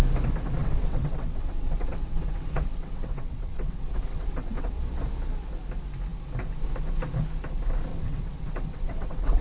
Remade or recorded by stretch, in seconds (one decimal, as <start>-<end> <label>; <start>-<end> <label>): 0.0-0.6 recorded; 0.6-4.8 remade; 4.8-7.9 recorded; 7.9-9.4 remade